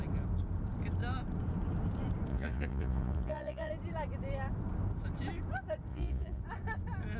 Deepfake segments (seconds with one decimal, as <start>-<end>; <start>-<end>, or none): 2.3-3.7; 5.9-6.4